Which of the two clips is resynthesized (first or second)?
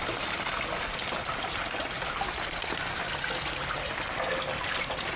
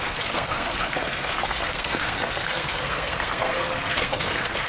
second